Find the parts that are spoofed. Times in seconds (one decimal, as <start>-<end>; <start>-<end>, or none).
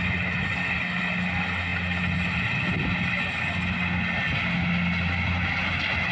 none